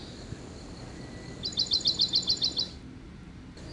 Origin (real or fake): real